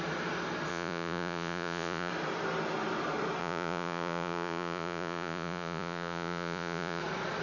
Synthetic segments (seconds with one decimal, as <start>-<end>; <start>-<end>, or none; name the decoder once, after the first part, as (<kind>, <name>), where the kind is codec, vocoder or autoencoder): 0.7-2.1 (vocoder, Vocos); 3.4-7.0